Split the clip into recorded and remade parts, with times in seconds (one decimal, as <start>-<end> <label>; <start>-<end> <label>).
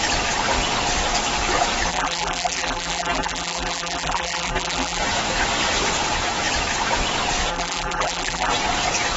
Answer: 0.0-1.9 recorded; 1.9-5.0 remade; 5.0-7.5 recorded; 7.5-8.5 remade; 8.5-9.2 recorded